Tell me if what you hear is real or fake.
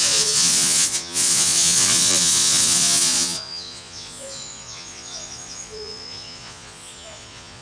fake